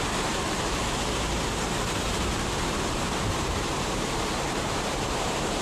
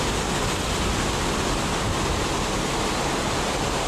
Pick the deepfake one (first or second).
first